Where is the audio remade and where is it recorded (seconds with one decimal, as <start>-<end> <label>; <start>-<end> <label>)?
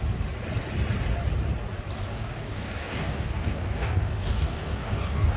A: 0.0-2.1 recorded; 2.1-5.4 remade